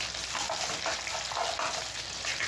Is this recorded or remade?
recorded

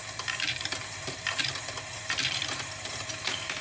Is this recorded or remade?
remade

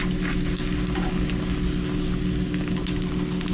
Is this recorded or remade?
recorded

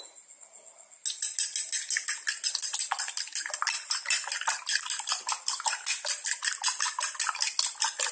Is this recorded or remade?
recorded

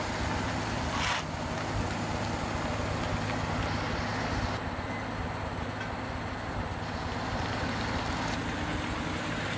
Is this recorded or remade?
recorded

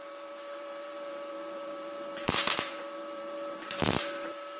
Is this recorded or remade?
remade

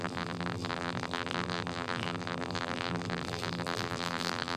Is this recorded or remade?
remade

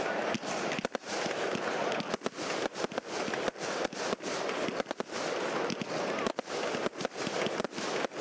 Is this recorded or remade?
recorded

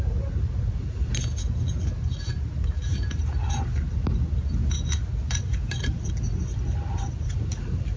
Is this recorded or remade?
recorded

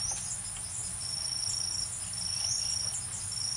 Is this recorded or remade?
recorded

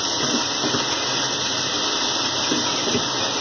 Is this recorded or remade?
recorded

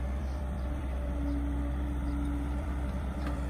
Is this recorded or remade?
remade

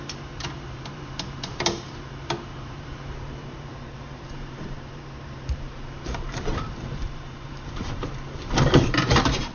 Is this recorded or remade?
remade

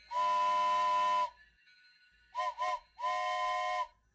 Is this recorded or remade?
recorded